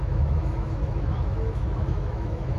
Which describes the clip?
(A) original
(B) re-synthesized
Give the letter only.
B